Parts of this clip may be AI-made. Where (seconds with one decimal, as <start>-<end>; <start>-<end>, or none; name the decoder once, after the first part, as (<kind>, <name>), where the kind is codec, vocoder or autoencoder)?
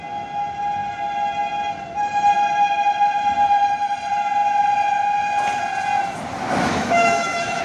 6.7-7.6 (autoencoder, DAC-VAE)